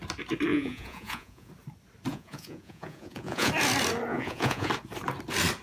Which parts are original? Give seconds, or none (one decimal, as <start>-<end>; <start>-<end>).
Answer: 0.0-0.5; 1.5-2.1; 3.5-4.1; 4.7-5.6